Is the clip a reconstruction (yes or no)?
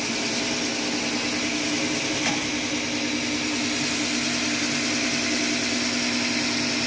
no